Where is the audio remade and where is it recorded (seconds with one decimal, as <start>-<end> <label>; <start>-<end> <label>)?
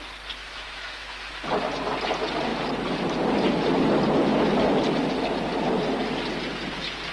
0.0-0.4 recorded; 0.4-1.3 remade; 1.3-7.1 recorded